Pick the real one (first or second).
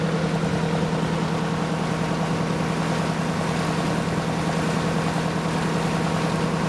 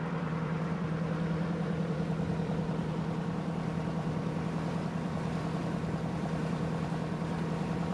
first